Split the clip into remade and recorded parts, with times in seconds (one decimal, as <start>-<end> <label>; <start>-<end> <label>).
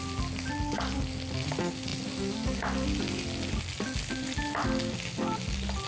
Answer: 0.0-5.9 recorded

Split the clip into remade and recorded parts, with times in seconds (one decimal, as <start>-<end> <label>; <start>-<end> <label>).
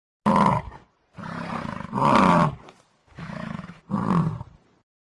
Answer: 0.0-3.0 recorded; 3.0-3.8 remade; 3.8-5.0 recorded